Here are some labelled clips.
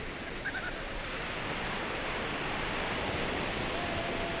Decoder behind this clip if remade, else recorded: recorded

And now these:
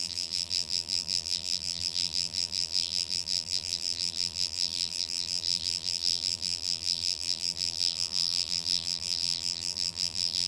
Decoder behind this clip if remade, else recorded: remade, vocoder, BigVGAN v2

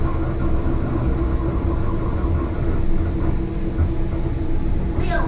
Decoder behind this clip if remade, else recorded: recorded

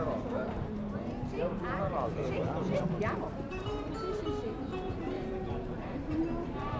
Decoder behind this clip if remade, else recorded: remade, vocoder, BigVGAN v2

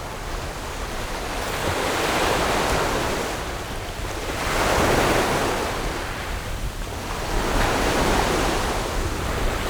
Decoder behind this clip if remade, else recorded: recorded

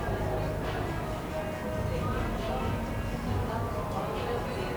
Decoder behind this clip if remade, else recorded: recorded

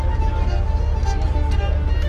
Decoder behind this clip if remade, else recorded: recorded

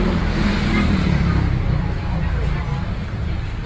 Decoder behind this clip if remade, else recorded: remade, vocoder, BigVGAN v2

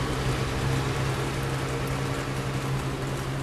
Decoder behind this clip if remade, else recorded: recorded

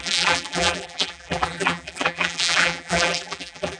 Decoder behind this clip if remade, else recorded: remade, vocoder, BigVGAN v2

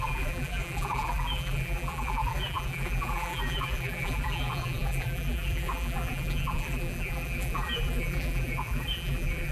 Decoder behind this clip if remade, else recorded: remade, vocoder, BigVGAN v2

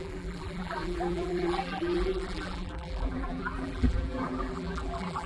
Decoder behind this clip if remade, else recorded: remade, vocoder, BigVGAN v2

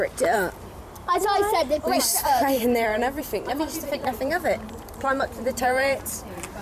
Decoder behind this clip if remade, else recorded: remade, vocoder, BigVGAN v2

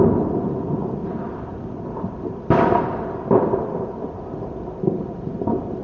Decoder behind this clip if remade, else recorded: recorded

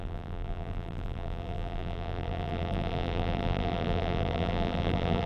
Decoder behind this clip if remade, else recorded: remade, vocoder, BigVGAN v2